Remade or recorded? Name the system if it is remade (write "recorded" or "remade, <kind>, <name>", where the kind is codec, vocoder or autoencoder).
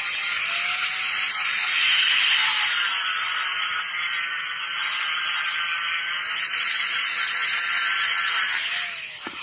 recorded